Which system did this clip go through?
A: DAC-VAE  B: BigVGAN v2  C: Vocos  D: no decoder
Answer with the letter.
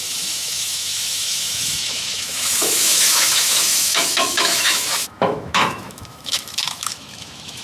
A